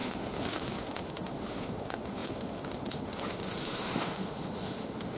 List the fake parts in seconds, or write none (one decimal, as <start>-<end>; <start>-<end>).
0.0-5.2